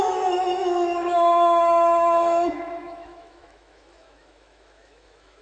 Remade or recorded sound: remade